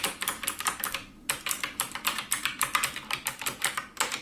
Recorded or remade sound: remade